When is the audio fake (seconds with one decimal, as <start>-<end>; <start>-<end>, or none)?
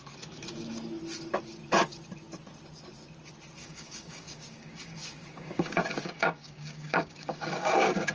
3.6-8.1